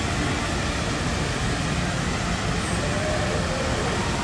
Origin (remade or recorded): recorded